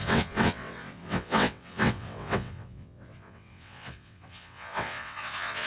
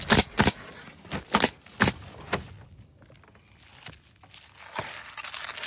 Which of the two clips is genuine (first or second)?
second